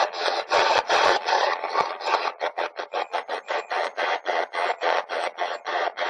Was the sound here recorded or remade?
remade